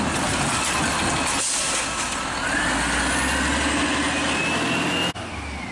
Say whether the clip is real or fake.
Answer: real